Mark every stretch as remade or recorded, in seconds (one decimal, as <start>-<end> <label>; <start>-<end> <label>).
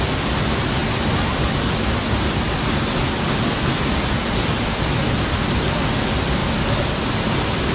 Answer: 0.0-7.7 recorded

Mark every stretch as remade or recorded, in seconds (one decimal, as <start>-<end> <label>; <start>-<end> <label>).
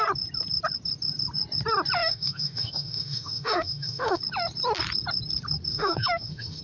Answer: 0.0-2.0 recorded; 2.0-4.2 remade; 4.2-5.7 recorded; 5.7-6.6 remade